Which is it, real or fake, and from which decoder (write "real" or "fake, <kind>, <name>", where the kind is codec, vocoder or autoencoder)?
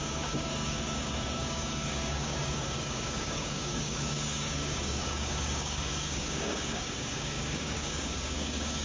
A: fake, codec, DAC